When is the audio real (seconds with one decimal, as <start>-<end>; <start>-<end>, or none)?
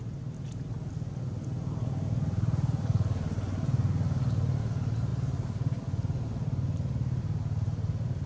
0.0-8.3